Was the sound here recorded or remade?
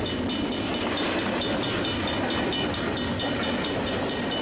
recorded